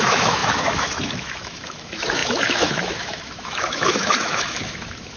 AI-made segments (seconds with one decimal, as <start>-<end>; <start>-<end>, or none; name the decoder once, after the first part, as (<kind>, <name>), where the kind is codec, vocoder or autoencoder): 0.0-5.2 (autoencoder, DAC-VAE)